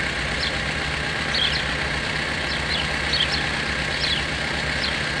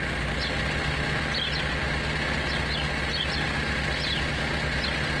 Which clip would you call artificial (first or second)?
first